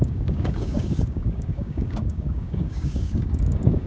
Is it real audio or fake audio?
fake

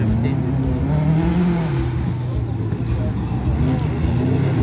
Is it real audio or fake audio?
real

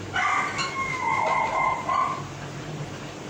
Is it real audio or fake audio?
real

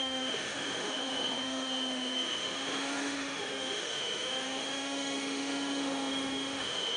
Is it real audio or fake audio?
fake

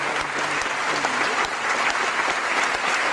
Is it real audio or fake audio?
real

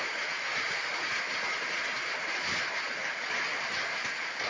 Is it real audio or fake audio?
real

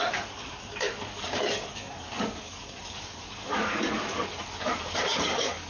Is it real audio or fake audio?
fake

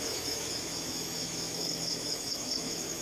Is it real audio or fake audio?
fake